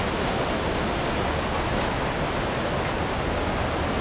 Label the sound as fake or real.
real